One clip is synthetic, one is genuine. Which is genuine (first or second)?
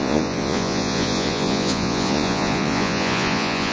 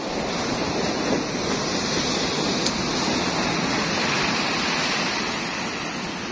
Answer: second